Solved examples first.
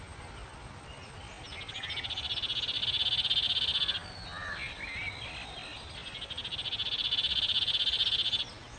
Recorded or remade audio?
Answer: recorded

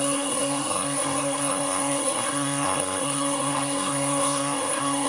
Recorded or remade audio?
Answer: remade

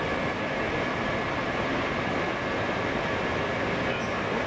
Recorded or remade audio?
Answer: recorded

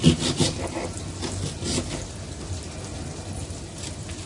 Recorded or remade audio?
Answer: recorded